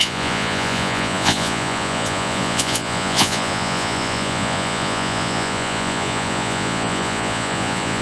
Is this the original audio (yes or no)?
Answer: no